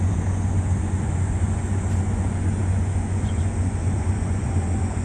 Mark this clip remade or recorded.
remade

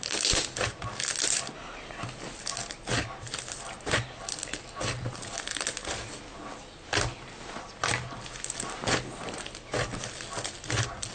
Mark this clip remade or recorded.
recorded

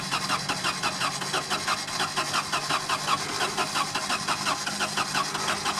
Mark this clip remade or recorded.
recorded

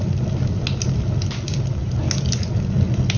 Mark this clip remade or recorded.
recorded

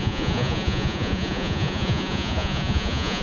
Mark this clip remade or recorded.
remade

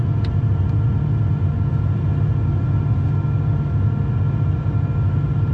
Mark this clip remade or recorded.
recorded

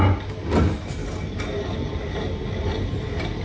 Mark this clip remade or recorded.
recorded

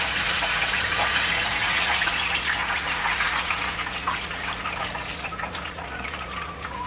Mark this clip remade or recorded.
remade